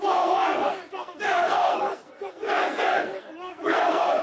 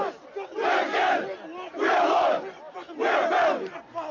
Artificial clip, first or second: first